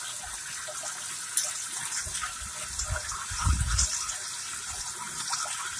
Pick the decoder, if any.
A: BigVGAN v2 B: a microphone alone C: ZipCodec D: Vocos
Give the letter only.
B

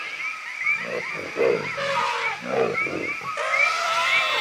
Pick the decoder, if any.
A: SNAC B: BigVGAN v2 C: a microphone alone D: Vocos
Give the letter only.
C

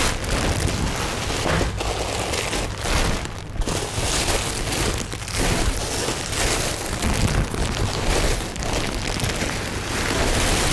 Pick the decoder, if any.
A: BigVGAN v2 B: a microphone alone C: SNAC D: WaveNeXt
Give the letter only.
B